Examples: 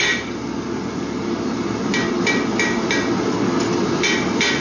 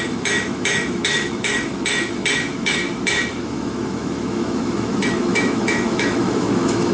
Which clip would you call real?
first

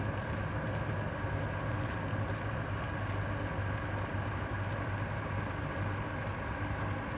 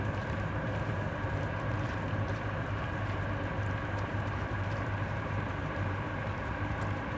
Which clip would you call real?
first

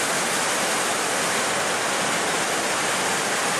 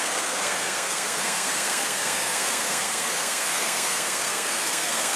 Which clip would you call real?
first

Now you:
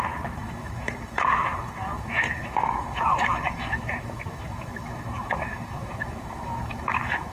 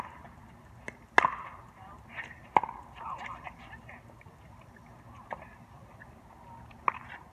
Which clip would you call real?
second